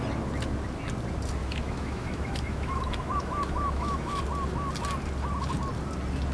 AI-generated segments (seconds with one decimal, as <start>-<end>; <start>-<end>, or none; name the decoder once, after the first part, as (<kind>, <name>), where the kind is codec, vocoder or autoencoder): 1.4-4.2 (autoencoder, DAC-VAE)